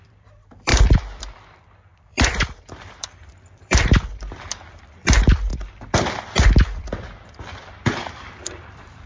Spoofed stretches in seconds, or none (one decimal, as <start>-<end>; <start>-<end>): 0.0-9.1